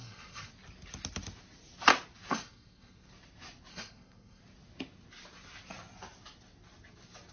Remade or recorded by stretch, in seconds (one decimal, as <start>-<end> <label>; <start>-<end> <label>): 0.0-0.5 remade; 0.5-2.3 recorded; 2.3-3.1 remade; 3.1-3.7 recorded; 3.7-4.4 remade; 4.4-7.3 recorded